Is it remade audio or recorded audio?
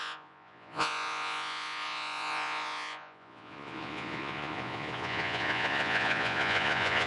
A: remade